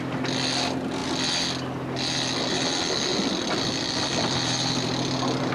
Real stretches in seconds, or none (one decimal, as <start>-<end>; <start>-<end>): 0.0-3.1